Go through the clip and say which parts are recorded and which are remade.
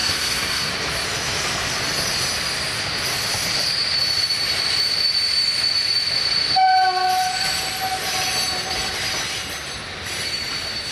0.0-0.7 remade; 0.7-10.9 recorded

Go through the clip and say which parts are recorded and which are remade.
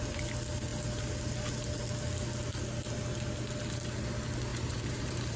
0.0-4.5 recorded; 4.5-5.4 remade